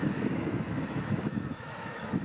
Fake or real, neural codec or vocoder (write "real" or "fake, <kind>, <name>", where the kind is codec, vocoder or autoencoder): fake, autoencoder, DAC-VAE